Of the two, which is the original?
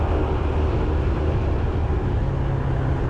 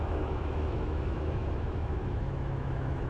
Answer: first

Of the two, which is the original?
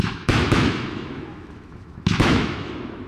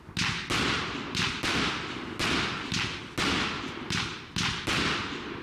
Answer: second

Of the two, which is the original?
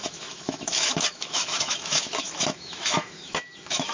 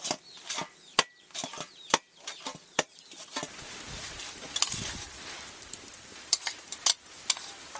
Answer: second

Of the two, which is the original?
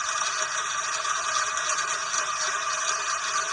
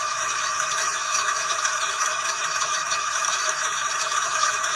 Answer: first